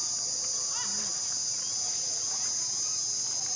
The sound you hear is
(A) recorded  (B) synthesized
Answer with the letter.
A